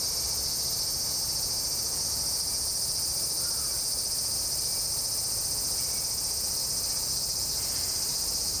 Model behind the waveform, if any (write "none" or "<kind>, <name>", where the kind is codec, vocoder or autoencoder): none